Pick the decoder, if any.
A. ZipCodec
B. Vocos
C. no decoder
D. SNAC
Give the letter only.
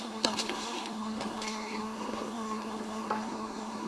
D